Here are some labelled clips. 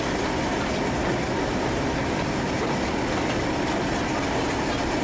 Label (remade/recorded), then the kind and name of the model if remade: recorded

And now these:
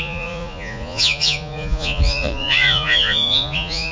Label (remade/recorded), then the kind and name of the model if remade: remade, vocoder, Vocos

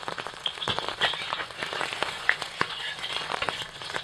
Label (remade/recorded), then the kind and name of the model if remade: remade, vocoder, Vocos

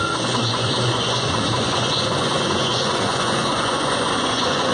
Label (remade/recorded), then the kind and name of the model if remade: remade, vocoder, Vocos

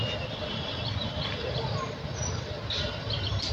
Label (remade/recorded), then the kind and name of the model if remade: recorded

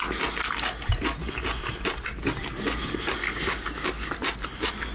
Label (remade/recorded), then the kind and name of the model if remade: recorded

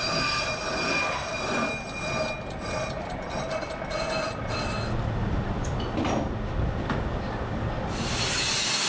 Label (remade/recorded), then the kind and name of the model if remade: recorded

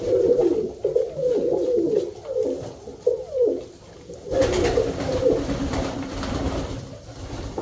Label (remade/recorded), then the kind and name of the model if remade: recorded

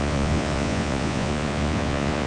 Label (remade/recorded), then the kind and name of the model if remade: remade, vocoder, Vocos